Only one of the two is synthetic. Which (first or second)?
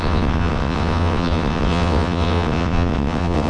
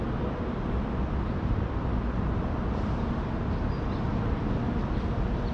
first